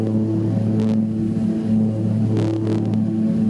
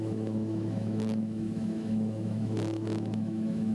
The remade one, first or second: second